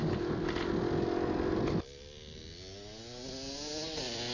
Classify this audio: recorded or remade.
recorded